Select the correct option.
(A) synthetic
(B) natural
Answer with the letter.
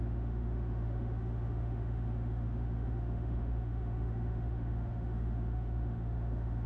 A